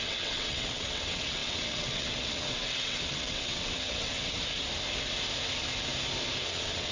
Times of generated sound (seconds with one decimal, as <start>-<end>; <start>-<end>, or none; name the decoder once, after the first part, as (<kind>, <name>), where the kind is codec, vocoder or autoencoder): 0.0-4.4 (vocoder, WaveNeXt); 6.4-6.9